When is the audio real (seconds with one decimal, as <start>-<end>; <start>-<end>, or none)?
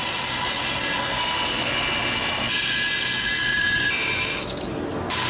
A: 0.0-5.3